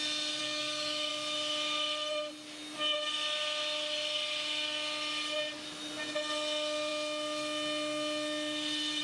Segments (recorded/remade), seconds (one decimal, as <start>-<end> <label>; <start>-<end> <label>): 0.0-0.4 recorded; 0.4-1.1 remade; 1.1-9.0 recorded